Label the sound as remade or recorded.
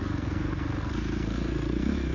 remade